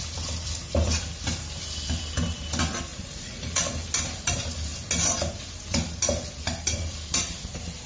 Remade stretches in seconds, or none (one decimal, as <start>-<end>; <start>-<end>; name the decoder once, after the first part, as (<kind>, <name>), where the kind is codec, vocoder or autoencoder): 2.9-3.6 (vocoder, Vocos)